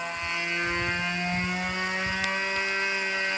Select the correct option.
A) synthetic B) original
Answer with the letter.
B